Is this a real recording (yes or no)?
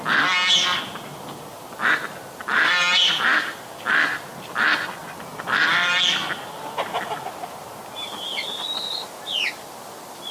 yes